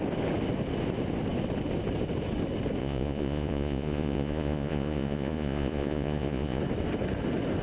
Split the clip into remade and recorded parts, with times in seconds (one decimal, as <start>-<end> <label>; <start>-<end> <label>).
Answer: 0.0-2.8 recorded; 2.8-6.6 remade; 6.6-7.6 recorded